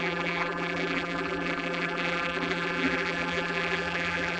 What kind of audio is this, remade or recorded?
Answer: remade